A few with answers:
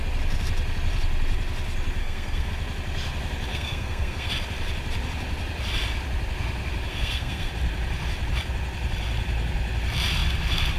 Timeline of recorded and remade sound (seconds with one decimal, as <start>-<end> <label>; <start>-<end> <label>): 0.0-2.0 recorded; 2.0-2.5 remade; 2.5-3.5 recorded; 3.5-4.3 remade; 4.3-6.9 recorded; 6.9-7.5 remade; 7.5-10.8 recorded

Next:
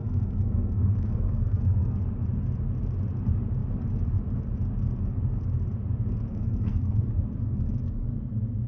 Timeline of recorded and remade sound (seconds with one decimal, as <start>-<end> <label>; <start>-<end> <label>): 0.0-2.0 remade; 2.0-6.3 recorded; 6.3-7.0 remade; 7.0-8.7 recorded

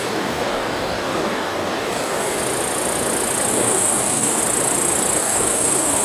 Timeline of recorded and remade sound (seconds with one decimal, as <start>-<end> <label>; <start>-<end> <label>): 0.0-2.4 remade; 2.4-3.5 recorded; 3.5-4.4 remade; 4.4-5.2 recorded; 5.2-6.0 remade